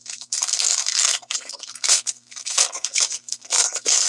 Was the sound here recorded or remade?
remade